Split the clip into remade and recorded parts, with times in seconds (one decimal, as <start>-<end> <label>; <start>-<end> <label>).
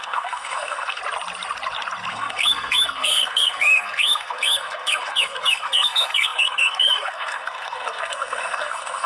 0.0-1.0 remade; 1.0-2.1 recorded; 2.1-9.1 remade